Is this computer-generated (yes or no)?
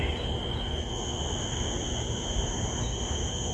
no